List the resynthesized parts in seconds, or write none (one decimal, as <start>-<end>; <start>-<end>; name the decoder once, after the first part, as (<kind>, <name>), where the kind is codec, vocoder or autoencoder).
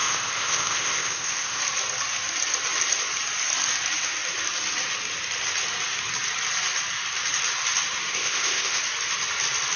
0.0-1.6 (codec, ZipCodec); 8.1-8.8